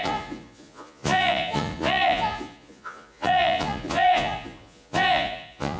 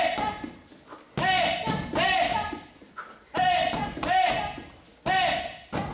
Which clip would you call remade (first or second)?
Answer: first